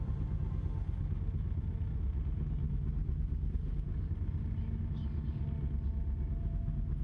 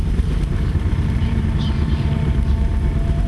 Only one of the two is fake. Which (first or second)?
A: second